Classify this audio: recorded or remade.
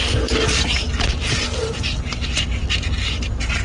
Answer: recorded